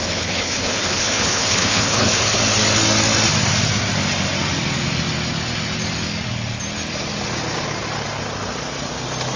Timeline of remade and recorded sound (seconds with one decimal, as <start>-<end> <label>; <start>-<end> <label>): 0.0-2.4 remade; 2.4-9.4 recorded